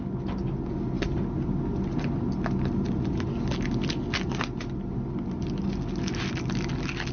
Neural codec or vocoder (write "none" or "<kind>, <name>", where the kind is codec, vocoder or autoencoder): none